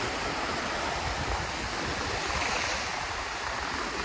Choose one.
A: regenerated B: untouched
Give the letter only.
B